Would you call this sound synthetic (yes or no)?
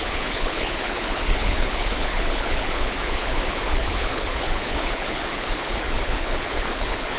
yes